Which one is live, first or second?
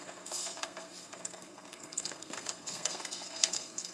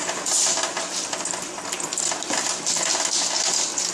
second